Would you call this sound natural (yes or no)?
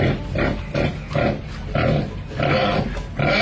yes